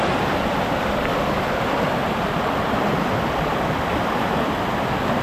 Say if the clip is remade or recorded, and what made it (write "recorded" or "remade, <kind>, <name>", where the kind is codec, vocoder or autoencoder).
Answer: recorded